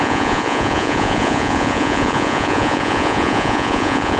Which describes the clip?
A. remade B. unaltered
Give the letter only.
A